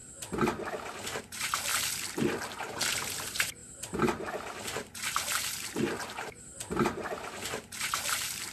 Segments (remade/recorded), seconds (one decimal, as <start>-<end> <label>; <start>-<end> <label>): 0.0-1.2 recorded; 1.2-1.7 remade; 1.7-3.2 recorded; 3.2-8.5 remade